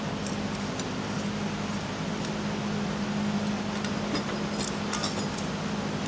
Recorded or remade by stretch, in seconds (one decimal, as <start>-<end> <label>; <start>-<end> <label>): 0.0-6.1 recorded